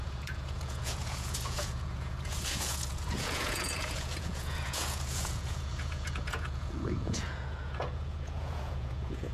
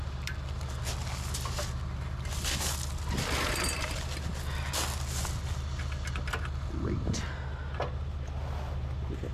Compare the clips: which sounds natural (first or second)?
second